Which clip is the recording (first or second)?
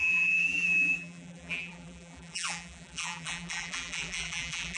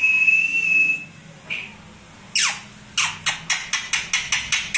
second